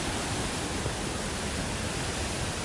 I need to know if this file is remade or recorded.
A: recorded